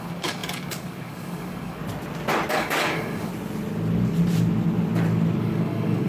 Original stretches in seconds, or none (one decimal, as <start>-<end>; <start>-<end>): 1.8-2.5; 3.3-5.4